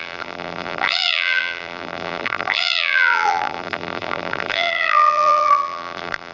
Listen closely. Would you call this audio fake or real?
fake